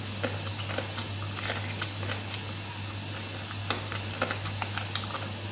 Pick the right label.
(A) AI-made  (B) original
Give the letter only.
B